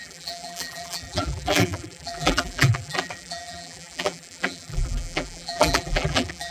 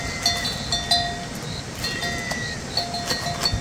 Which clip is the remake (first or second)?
first